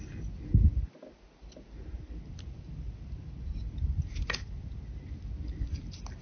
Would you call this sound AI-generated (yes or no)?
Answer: no